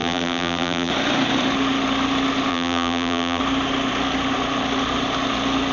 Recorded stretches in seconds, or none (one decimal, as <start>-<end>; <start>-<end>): 0.9-2.5; 3.4-5.7